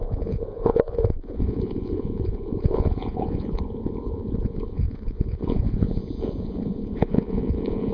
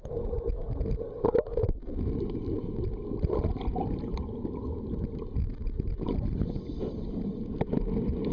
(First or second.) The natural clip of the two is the second